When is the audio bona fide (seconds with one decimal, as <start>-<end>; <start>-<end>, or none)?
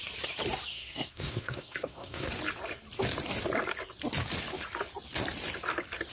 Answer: 0.0-0.7; 2.3-6.1